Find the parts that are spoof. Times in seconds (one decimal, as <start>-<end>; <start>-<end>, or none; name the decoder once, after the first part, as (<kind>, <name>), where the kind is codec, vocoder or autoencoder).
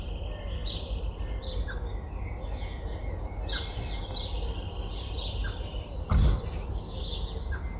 none